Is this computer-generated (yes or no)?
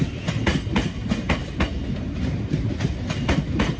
no